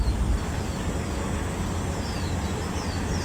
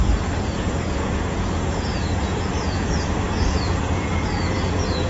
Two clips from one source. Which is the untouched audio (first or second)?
first